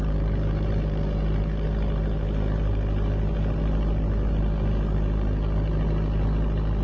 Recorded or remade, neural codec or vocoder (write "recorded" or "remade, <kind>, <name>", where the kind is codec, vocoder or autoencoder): recorded